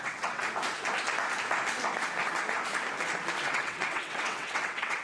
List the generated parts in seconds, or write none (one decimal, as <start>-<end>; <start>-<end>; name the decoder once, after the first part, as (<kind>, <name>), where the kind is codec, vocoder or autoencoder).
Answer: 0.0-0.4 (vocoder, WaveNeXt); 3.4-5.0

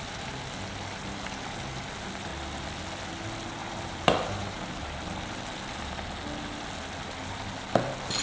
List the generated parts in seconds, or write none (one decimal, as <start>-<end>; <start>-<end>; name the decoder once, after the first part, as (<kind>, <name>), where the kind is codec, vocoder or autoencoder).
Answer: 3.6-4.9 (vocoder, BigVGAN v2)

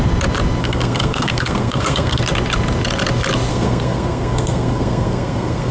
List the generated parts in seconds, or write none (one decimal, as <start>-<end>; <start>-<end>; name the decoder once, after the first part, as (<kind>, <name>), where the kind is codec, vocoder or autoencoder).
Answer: 0.6-2.2 (codec, SNAC); 3.5-5.7